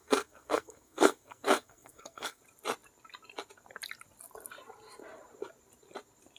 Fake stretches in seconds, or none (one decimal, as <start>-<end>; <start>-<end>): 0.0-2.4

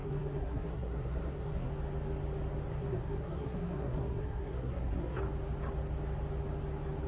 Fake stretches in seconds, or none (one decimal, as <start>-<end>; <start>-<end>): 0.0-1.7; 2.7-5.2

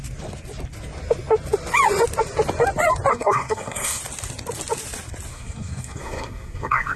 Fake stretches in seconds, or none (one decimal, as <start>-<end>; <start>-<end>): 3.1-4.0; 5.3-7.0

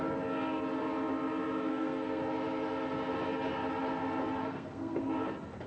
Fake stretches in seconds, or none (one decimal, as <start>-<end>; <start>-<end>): 1.7-2.2; 4.4-5.0